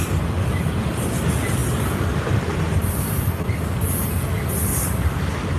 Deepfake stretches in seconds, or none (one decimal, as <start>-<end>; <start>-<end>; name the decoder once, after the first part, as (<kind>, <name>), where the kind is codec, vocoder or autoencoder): 1.6-2.9 (vocoder, BigVGAN v2)